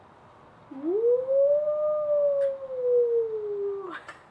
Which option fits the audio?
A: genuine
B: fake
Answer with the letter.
A